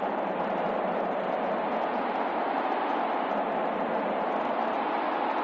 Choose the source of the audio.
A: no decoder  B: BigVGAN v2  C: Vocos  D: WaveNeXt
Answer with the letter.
A